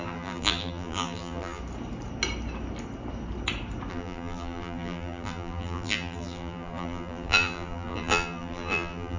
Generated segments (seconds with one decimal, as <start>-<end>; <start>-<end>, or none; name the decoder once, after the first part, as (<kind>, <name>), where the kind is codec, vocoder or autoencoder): 0.0-1.6 (vocoder, BigVGAN v2); 3.9-9.2